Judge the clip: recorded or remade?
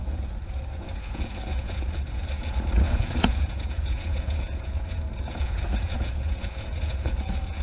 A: remade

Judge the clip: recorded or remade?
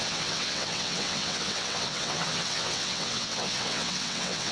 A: remade